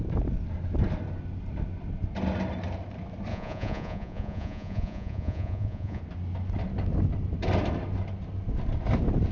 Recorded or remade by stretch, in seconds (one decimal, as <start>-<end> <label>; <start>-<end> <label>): 0.0-3.3 recorded; 3.3-6.0 remade; 6.0-9.3 recorded